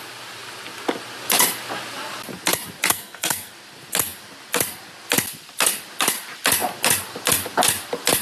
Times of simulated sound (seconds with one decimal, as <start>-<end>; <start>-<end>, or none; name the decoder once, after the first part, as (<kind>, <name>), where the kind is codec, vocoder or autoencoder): 2.9-3.5 (codec, SNAC)